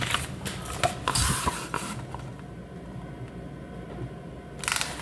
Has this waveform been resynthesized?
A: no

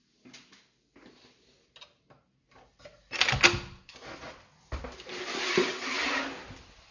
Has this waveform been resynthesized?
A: no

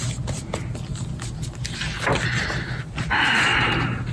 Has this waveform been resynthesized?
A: no